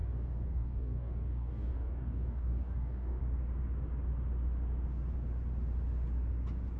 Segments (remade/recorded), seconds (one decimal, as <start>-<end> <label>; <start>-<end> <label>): 0.0-3.2 remade; 3.2-6.8 recorded